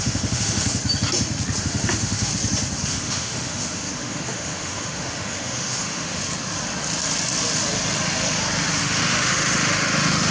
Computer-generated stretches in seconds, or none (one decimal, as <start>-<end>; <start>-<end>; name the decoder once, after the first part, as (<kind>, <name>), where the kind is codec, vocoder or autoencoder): 0.0-0.8 (autoencoder, DAC-VAE); 1.6-2.3; 2.9-6.2; 8.8-10.3